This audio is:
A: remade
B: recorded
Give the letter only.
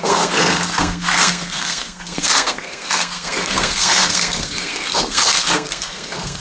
A